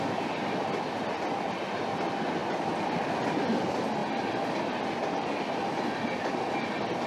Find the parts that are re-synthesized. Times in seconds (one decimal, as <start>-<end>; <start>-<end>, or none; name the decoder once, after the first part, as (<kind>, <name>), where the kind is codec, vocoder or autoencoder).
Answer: none